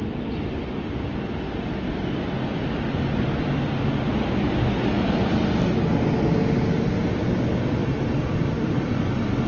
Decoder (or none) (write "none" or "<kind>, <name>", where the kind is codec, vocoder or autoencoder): none